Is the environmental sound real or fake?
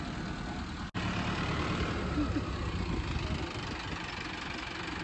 real